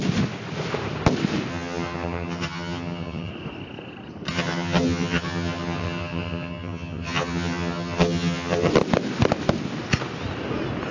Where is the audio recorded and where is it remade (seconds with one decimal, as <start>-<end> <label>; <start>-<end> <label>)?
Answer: 0.0-1.5 recorded; 1.5-3.3 remade; 3.3-4.3 recorded; 4.3-8.7 remade; 8.7-10.9 recorded